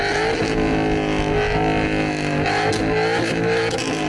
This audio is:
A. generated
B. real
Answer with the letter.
B